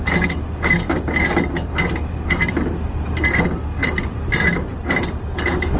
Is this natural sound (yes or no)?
yes